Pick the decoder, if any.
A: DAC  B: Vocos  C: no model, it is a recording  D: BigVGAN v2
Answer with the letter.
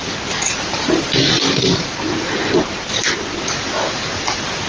C